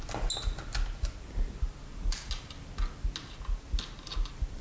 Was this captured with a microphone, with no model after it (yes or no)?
yes